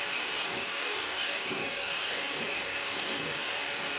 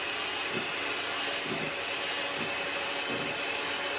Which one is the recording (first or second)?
second